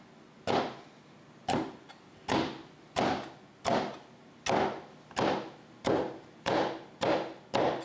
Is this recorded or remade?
recorded